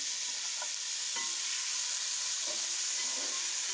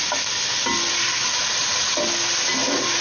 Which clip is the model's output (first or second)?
first